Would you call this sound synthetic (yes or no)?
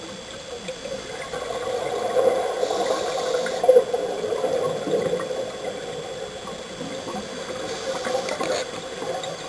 no